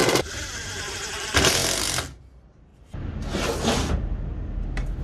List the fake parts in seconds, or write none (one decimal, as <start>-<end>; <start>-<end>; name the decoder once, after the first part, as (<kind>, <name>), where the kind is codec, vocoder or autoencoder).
0.0-1.1 (vocoder, BigVGAN v2); 2.7-3.6